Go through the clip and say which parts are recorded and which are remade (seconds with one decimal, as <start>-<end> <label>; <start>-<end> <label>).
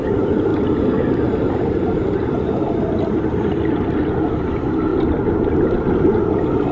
0.0-6.7 recorded